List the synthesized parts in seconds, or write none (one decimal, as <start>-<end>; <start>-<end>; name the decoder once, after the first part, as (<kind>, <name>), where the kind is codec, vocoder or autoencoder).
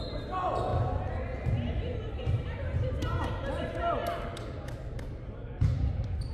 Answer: none